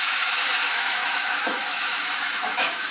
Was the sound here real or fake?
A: fake